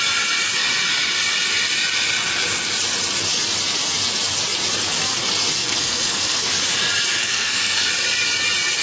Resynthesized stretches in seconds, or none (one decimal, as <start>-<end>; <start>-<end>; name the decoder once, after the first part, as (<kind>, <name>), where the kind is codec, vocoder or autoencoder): 5.6-6.5 (codec, SNAC); 7.2-7.9